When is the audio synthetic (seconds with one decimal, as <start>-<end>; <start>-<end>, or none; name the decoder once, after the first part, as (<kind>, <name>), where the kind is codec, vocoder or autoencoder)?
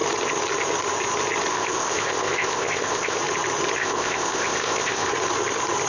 1.5-3.2 (codec, ZipCodec); 3.8-5.1